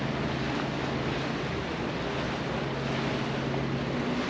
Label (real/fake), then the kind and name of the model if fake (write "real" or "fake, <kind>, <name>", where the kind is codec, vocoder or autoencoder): real